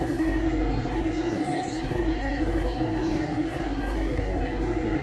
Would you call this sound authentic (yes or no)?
no